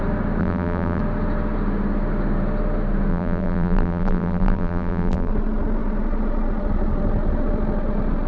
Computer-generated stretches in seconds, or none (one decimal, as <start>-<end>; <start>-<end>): 0.4-1.0; 3.1-5.3